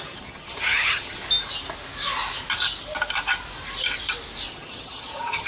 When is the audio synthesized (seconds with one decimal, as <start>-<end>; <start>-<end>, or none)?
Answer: 0.0-1.2; 4.5-5.5